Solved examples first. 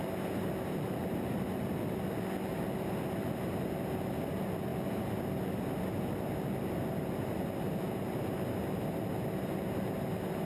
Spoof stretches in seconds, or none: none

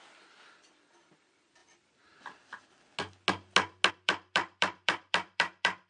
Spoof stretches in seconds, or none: 0.0-1.6 (vocoder, BigVGAN v2); 3.9-5.9

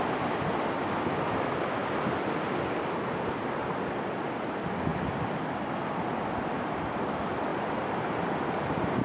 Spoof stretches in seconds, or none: 1.8-3.3 (vocoder, BigVGAN v2); 4.9-5.8; 7.5-9.0

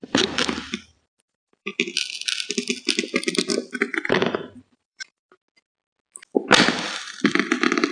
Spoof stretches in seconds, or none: 0.0-1.7 (vocoder, BigVGAN v2); 3.5-5.4; 6.6-7.9

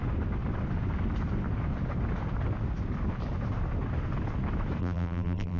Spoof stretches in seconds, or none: 4.8-5.6 (vocoder, BigVGAN v2)

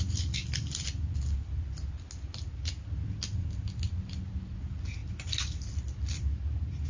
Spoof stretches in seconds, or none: 0.0-0.4 (vocoder, BigVGAN v2); 3.9-5.0; 5.8-6.9